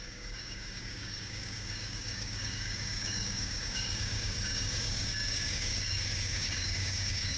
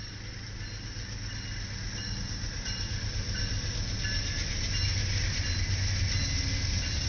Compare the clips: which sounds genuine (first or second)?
second